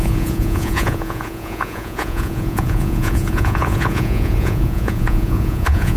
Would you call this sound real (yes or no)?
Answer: no